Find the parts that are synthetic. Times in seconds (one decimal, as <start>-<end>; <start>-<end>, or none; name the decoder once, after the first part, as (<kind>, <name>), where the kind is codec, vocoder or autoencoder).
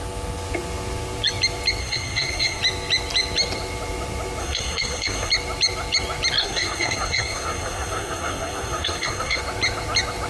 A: 1.8-2.6 (codec, SNAC); 4.4-5.3; 6.4-9.4